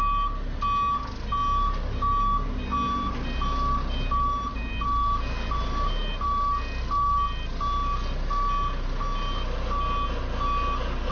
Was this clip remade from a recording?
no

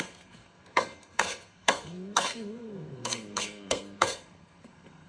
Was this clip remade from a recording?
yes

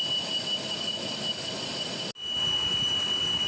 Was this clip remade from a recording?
no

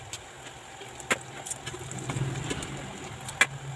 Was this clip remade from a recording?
no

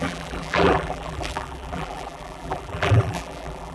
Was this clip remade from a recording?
yes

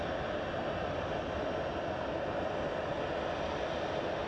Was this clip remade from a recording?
no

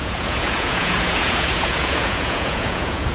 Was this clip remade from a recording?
yes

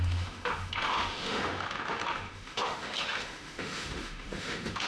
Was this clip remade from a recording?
yes